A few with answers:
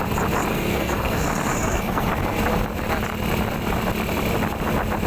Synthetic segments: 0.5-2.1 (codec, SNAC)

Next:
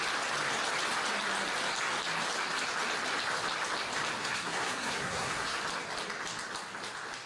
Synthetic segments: 4.2-5.6 (codec, SNAC)

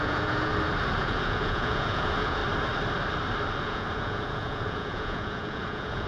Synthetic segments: 0.0-0.5 (vocoder, Vocos); 1.0-2.4; 3.6-6.1